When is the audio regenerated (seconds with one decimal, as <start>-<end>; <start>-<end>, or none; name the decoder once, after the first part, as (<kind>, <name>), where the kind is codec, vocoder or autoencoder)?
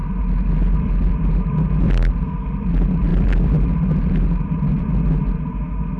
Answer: none